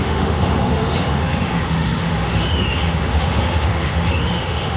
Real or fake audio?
fake